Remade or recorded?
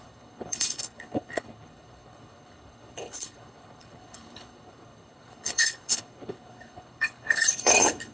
remade